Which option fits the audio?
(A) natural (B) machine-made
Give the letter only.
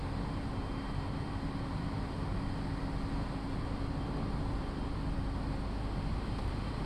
A